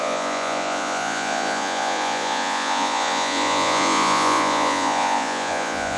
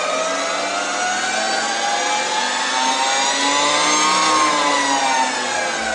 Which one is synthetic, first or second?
first